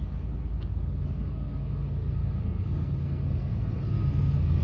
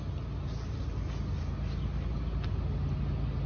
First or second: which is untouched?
second